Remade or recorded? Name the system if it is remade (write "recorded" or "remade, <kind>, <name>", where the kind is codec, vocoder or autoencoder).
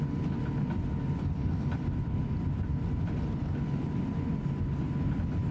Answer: recorded